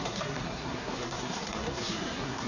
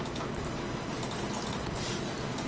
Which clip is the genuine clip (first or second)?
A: second